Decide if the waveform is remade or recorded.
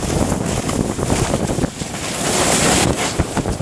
recorded